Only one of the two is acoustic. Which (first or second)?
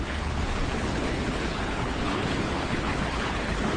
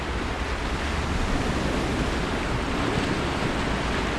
second